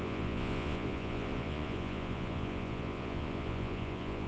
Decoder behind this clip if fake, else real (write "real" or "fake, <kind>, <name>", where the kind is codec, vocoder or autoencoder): fake, vocoder, Vocos